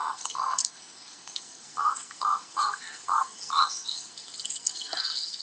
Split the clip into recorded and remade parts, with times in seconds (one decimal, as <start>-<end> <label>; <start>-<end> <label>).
0.0-5.4 remade